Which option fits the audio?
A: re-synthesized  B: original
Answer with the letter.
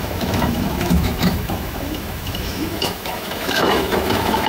A